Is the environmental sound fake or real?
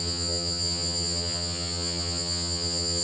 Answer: fake